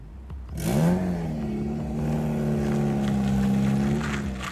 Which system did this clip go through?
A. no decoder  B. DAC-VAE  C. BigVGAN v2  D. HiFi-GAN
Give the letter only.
A